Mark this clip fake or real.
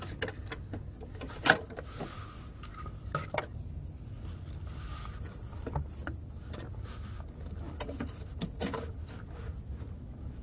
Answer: real